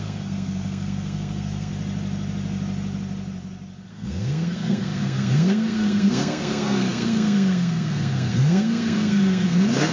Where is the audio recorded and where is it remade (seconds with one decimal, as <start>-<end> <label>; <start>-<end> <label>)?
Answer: 0.0-1.7 remade; 1.7-3.9 recorded; 3.9-9.9 remade